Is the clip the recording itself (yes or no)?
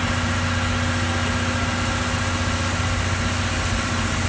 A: yes